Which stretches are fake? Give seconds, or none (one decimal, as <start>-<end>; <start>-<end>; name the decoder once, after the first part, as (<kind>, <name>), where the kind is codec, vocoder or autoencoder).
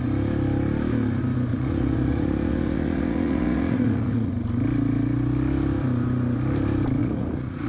1.5-4.3 (vocoder, Vocos); 7.0-7.7